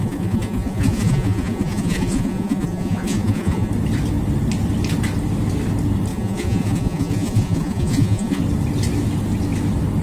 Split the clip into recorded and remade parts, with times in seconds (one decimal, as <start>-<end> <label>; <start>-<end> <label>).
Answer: 0.0-3.7 remade; 3.7-6.1 recorded; 6.1-8.4 remade; 8.4-10.0 recorded